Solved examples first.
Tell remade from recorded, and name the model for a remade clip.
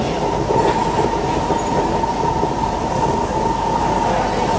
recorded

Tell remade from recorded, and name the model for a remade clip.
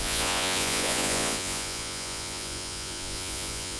remade, vocoder, Vocos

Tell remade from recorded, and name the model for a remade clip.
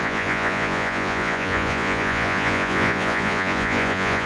remade, vocoder, Vocos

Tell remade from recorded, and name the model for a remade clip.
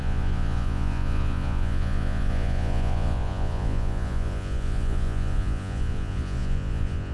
remade, vocoder, Vocos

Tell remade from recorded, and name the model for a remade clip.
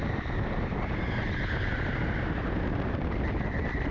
recorded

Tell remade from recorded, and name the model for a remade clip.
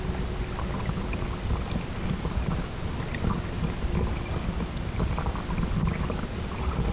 recorded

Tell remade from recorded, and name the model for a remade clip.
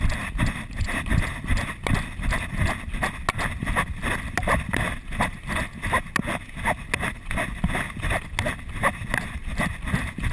recorded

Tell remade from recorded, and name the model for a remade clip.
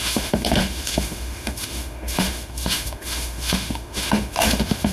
remade, autoencoder, DAC-VAE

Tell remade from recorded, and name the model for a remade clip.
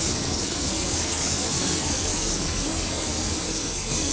remade, codec, SNAC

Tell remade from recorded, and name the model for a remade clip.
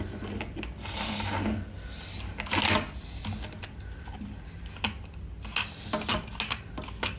recorded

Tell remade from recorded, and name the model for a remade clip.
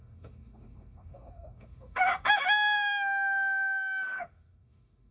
remade, autoencoder, DAC-VAE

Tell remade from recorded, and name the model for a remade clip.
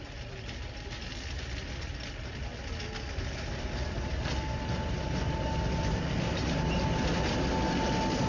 recorded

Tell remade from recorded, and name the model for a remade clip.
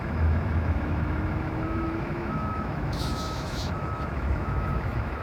remade, autoencoder, DAC-VAE